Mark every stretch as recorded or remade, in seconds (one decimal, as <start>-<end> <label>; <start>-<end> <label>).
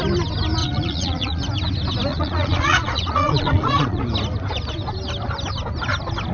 0.0-0.6 recorded; 0.6-1.4 remade; 1.4-2.1 recorded; 2.1-4.0 remade; 4.0-6.3 recorded